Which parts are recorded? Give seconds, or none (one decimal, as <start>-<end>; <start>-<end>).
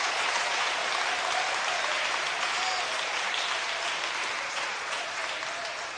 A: 0.8-4.4; 5.2-6.0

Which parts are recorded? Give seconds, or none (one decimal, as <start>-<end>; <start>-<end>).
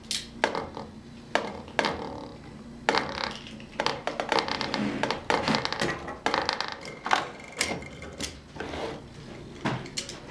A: 0.0-10.3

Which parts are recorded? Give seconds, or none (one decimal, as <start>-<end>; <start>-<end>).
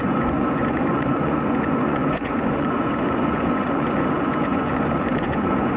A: none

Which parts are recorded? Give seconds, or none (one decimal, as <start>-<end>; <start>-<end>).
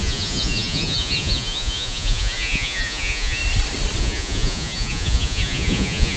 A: 3.4-4.0